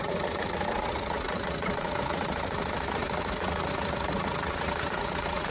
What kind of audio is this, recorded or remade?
remade